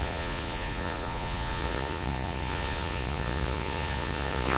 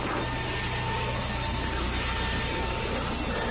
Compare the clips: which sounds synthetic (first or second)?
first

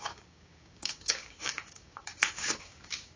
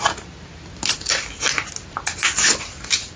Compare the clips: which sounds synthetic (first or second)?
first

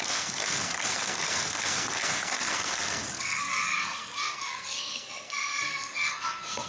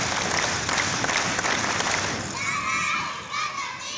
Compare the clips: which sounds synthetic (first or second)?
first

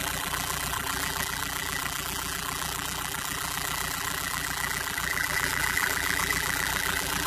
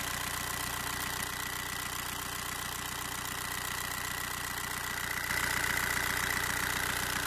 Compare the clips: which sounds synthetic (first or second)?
first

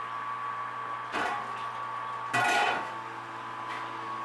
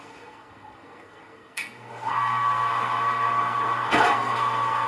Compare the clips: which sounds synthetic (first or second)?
second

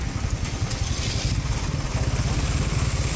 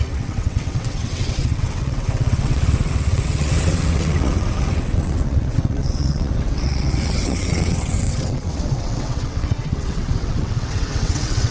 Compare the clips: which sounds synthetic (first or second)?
second